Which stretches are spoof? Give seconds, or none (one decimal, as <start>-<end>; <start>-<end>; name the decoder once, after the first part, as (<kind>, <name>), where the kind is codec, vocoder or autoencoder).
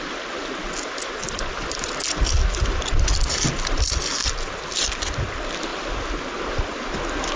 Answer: none